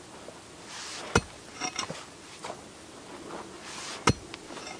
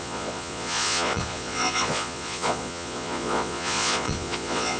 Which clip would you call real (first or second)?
first